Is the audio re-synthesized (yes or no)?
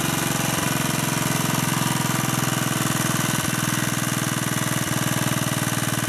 no